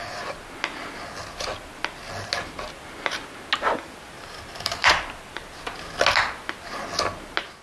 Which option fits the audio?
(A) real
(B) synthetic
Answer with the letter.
A